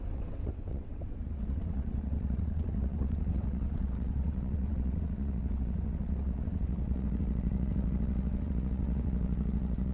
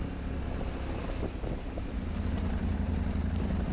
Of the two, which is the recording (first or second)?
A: second